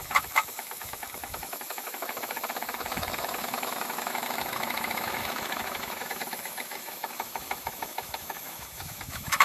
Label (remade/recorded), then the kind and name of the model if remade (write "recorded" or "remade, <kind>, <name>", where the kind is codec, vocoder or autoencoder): remade, autoencoder, DAC-VAE